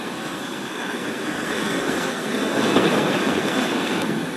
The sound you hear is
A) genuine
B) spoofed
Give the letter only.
B